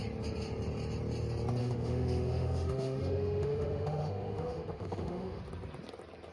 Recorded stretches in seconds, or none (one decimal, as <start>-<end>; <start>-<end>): 0.0-1.6; 5.4-6.3